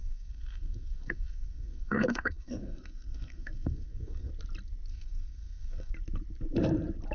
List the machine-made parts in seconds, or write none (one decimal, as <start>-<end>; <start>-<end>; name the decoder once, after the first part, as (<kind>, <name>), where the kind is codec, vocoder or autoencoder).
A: 0.0-4.3 (codec, SNAC); 4.9-5.9